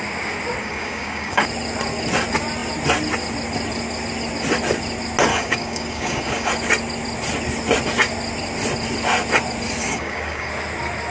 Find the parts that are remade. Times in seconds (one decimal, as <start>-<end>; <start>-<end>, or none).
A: 0.6-1.4; 5.3-6.5; 9.8-10.5